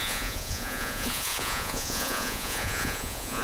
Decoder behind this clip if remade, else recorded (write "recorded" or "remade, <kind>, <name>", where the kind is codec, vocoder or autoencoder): remade, vocoder, Vocos